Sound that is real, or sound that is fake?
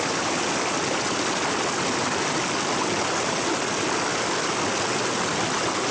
real